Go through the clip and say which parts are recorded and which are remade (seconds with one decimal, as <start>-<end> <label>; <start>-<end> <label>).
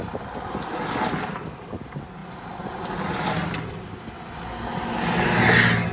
0.0-5.9 recorded